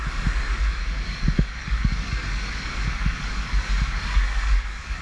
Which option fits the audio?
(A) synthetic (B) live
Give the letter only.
A